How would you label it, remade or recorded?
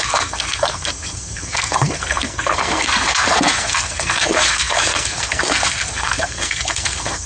remade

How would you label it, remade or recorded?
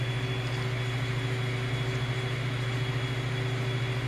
recorded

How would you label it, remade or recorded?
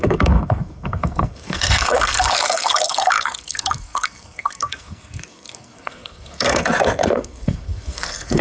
remade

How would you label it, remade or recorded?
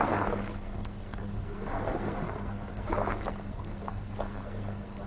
remade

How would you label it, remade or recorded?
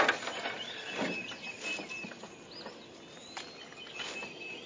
recorded